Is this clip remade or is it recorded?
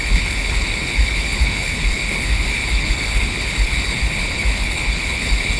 remade